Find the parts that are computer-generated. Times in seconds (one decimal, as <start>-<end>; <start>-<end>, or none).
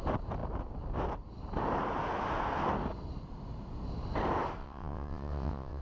4.6-5.8